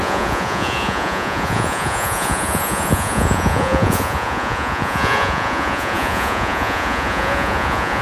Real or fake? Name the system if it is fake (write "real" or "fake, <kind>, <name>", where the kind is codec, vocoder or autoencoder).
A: fake, vocoder, Vocos